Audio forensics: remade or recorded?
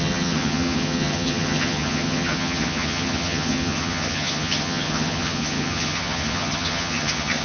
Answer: remade